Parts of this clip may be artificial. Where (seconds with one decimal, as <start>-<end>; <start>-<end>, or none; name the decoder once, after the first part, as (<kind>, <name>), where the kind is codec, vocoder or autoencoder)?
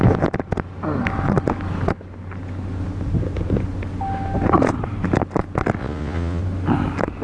5.8-6.4 (vocoder, Vocos)